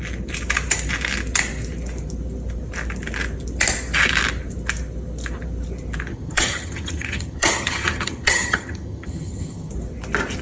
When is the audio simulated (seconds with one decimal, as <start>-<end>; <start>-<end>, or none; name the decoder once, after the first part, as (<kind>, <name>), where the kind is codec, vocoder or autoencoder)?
6.1-9.7 (vocoder, HiFi-GAN)